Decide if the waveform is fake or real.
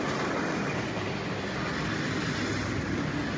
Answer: real